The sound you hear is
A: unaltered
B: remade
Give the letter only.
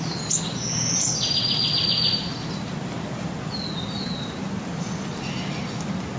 A